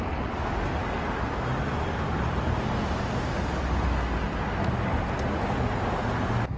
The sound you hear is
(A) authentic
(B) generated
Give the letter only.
A